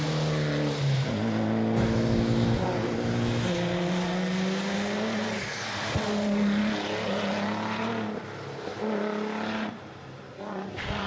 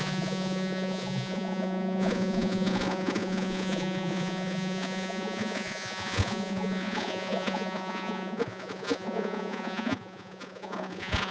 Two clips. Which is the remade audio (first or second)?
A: second